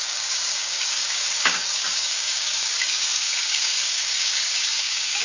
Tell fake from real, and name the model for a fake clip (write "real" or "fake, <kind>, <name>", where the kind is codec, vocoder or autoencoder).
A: fake, codec, DAC